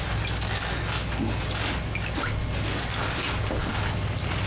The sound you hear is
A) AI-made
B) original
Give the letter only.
B